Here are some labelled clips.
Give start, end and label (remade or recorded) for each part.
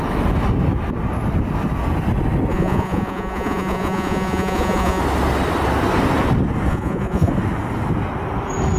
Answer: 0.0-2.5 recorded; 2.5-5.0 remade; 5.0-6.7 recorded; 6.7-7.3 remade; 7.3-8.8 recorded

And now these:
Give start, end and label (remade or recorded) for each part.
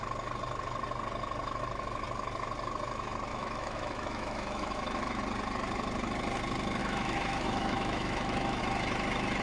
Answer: 0.0-3.3 recorded; 3.3-5.2 remade; 5.2-6.8 recorded; 6.8-8.6 remade; 8.6-9.4 recorded